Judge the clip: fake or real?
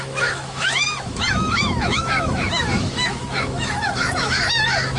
fake